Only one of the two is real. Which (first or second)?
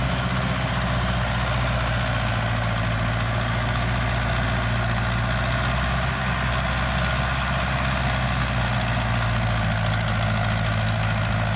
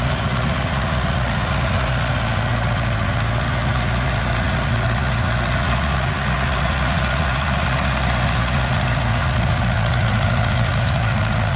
first